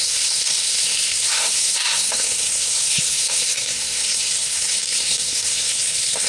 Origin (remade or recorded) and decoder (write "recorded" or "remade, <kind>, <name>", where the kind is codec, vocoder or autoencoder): remade, codec, SNAC